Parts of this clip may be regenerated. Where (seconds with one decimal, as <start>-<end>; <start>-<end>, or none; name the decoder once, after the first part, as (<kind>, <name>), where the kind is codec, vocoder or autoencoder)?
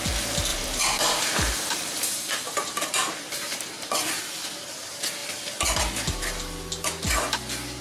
0.5-4.2 (vocoder, BigVGAN v2)